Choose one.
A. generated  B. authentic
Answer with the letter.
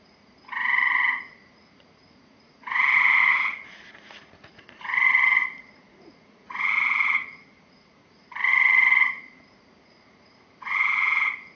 A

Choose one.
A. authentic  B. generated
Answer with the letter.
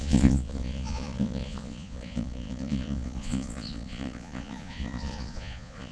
B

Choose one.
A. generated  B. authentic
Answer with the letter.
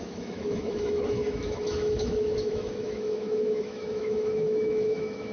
A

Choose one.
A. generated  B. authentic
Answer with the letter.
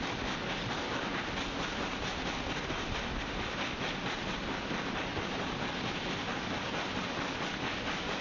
B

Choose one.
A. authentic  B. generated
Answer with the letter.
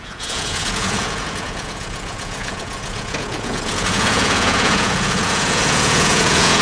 B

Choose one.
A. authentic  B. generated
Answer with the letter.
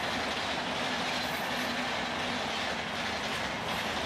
A